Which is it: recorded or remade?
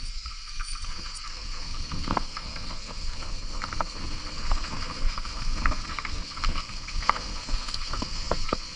remade